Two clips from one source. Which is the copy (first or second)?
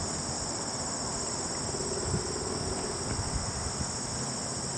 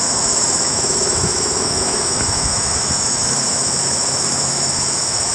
second